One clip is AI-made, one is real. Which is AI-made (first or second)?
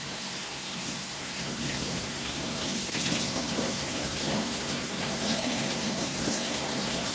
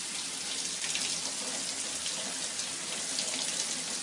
first